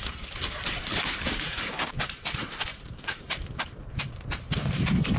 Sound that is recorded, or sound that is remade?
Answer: remade